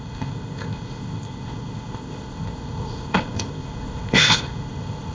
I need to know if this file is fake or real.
fake